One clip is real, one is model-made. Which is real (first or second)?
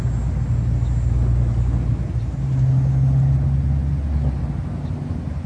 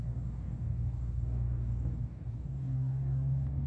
first